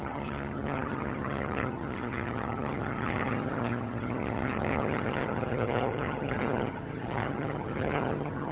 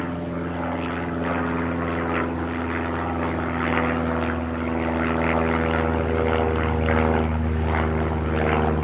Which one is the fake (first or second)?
first